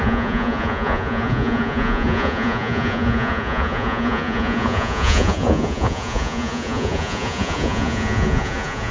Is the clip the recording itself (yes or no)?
no